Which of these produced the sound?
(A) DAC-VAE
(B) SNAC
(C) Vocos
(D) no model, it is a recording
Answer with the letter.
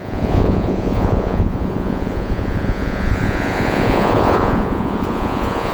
C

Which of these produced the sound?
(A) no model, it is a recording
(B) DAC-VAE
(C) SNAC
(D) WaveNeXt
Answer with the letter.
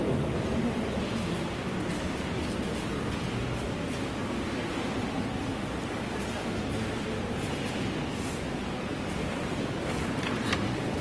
A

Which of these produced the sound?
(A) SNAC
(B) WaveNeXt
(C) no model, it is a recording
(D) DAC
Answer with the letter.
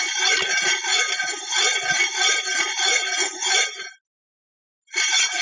C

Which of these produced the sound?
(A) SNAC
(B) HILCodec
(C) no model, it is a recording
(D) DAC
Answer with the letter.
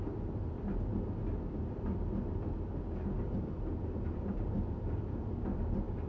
C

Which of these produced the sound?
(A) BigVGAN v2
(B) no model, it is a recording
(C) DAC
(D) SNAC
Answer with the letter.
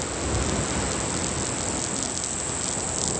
B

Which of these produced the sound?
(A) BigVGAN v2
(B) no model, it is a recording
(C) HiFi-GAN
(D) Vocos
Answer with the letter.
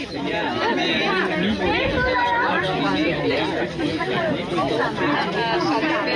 B